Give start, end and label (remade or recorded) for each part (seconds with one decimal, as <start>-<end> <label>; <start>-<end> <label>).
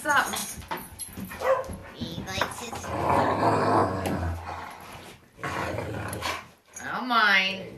0.0-0.4 recorded; 0.4-1.0 remade; 1.0-7.8 recorded